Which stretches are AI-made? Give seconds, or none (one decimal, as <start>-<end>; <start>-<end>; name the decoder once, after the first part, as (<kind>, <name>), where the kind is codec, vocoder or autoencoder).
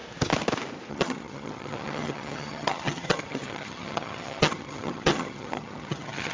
0.9-6.3 (vocoder, HiFi-GAN)